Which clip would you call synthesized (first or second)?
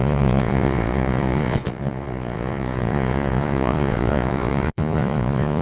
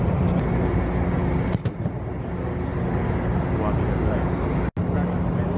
first